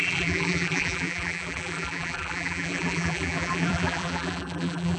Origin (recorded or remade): remade